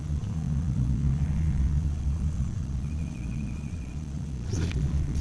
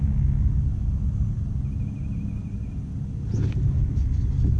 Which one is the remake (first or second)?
first